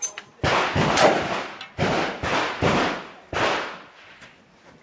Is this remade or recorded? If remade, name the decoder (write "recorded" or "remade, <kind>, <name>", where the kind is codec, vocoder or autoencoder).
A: recorded